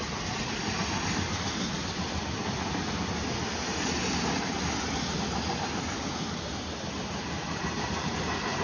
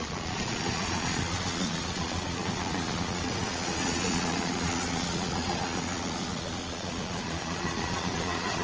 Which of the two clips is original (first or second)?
first